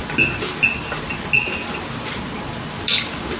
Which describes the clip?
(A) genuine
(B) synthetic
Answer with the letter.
A